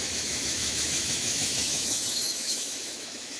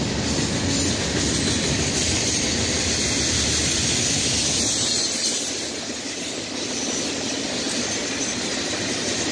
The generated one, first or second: first